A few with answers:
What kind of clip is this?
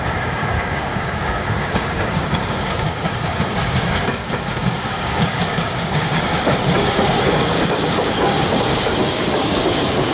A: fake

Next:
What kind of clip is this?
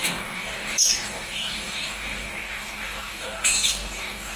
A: fake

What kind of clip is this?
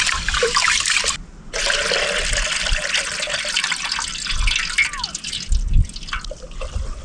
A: real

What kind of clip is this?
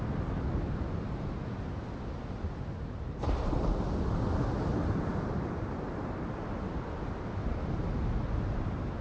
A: real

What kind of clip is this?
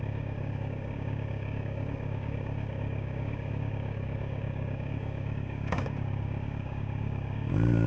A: fake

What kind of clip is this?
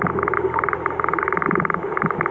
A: real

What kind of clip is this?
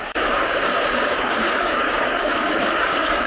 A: fake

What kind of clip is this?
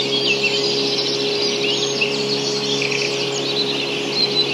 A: real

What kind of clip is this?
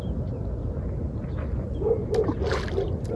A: real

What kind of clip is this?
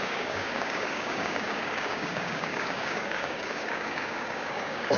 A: fake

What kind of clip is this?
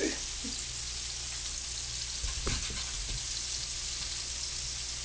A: real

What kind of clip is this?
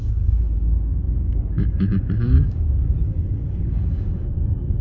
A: fake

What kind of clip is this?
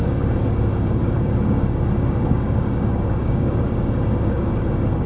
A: fake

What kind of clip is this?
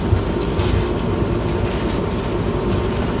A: real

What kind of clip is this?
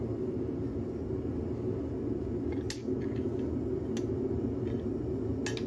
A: real